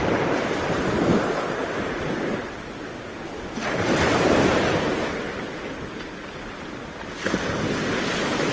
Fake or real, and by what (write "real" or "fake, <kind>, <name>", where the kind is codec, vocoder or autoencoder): real